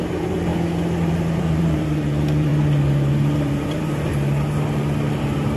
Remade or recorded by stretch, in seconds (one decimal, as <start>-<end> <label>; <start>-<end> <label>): 0.0-0.5 remade; 0.5-1.1 recorded; 1.1-2.5 remade; 2.5-3.1 recorded; 3.1-4.1 remade; 4.1-4.7 recorded; 4.7-5.6 remade